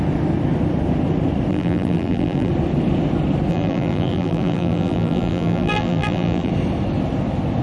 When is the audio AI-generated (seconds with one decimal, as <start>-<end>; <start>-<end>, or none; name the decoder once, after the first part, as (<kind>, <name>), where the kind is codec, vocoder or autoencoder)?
1.5-2.5 (vocoder, BigVGAN v2); 3.5-6.5